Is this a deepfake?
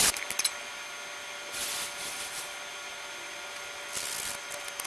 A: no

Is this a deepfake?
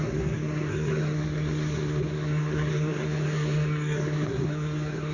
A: yes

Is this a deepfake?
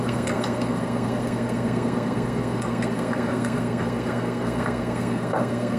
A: yes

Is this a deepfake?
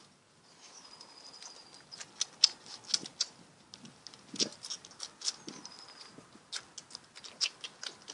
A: no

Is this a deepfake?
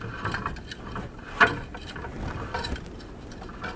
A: no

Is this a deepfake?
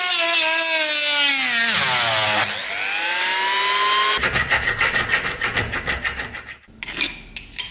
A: no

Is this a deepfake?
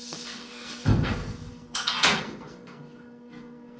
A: yes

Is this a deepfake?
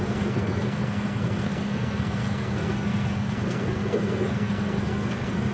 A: yes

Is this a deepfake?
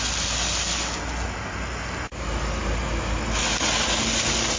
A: no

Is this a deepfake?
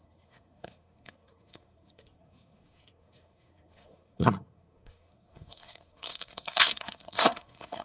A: yes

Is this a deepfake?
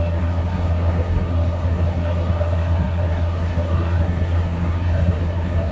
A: yes